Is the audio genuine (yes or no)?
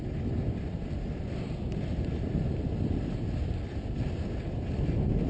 yes